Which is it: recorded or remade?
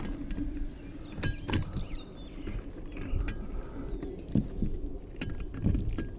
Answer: recorded